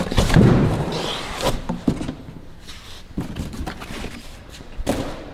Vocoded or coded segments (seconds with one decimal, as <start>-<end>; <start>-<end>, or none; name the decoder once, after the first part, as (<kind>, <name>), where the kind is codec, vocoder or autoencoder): 0.0-0.9 (vocoder, BigVGAN v2); 4.1-5.3